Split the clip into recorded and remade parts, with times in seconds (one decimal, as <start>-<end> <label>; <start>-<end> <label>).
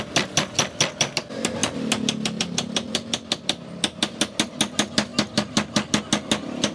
0.0-6.7 recorded